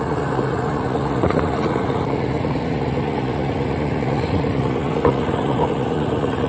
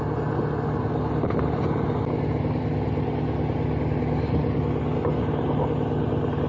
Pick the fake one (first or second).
first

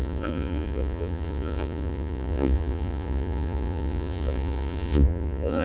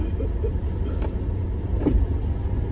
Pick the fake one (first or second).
first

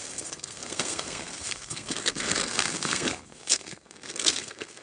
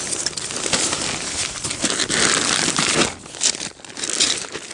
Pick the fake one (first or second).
first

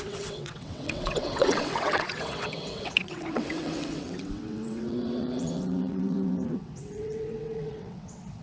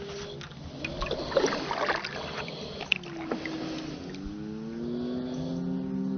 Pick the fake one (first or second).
first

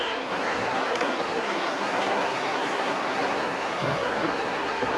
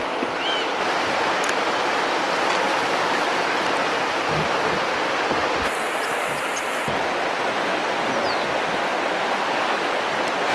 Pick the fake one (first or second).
first